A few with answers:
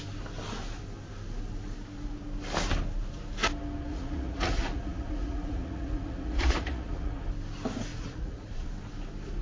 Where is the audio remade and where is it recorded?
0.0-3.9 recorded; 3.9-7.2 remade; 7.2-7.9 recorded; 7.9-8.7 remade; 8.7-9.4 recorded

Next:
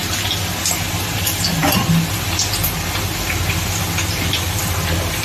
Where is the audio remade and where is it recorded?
0.0-5.2 recorded